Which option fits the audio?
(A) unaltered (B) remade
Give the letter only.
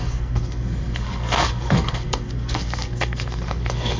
B